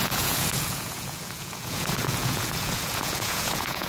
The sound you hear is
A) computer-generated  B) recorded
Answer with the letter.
A